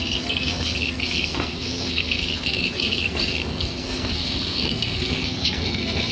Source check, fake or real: fake